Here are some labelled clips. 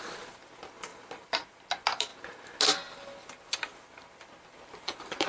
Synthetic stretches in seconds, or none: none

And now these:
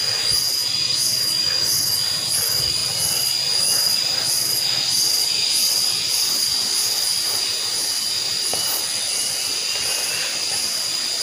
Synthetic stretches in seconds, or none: none

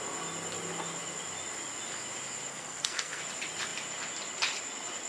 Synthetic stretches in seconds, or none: 2.5-3.2 (codec, SNAC)

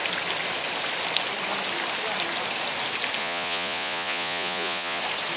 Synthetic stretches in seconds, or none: 3.2-5.0 (vocoder, Vocos)

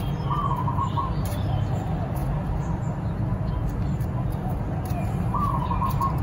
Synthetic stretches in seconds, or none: 0.8-1.6 (vocoder, BigVGAN v2)